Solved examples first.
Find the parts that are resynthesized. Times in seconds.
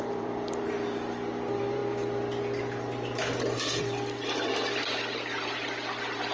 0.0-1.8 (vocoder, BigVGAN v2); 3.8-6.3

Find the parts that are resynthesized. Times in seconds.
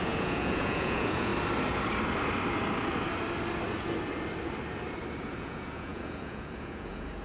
0.0-1.3 (vocoder, Vocos); 5.2-7.2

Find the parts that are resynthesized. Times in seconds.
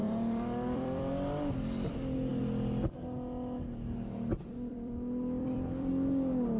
0.0-1.1 (vocoder, BigVGAN v2); 4.7-5.9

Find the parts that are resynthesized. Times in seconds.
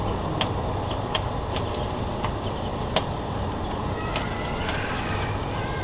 none